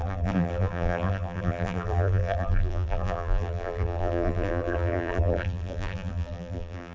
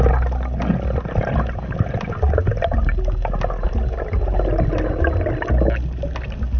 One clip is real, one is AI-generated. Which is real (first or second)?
second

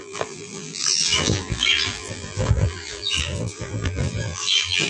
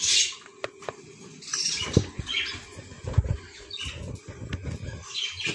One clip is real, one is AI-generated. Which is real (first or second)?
second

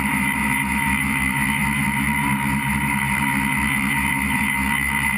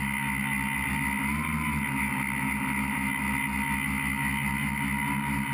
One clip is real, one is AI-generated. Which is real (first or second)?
second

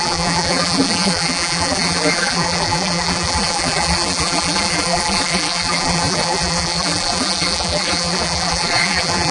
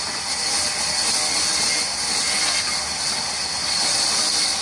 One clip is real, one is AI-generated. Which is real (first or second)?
second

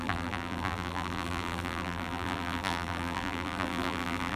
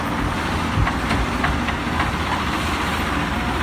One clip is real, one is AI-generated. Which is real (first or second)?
second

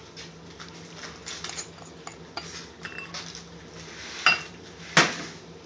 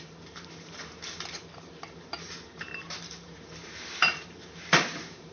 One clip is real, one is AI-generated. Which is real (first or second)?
first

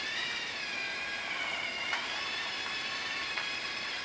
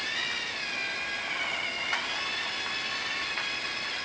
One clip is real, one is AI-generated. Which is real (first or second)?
second